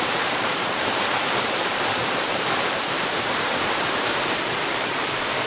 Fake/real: fake